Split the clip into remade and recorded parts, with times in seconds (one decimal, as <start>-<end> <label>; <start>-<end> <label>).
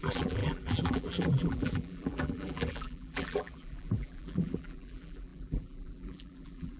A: 0.0-6.8 remade